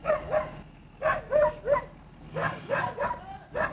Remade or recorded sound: recorded